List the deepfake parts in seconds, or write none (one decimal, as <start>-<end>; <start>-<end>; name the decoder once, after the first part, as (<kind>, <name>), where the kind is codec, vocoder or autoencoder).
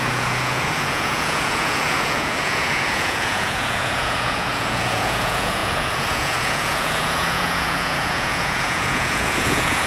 0.0-9.9 (vocoder, Vocos)